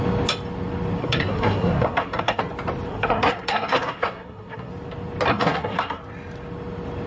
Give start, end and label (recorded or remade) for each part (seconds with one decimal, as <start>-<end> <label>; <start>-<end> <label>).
0.0-1.0 recorded; 1.0-2.4 remade; 2.4-2.9 recorded; 2.9-4.7 remade; 4.7-5.3 recorded; 5.3-6.0 remade; 6.0-7.1 recorded